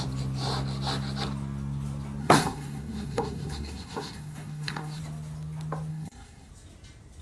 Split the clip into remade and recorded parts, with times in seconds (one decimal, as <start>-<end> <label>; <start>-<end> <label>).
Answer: 0.0-2.2 recorded; 2.2-5.0 remade; 5.0-5.9 recorded; 5.9-6.5 remade; 6.5-7.2 recorded